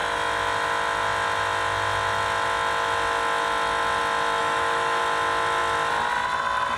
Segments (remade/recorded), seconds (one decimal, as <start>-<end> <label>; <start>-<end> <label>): 0.0-4.4 recorded; 4.4-5.0 remade; 5.0-6.8 recorded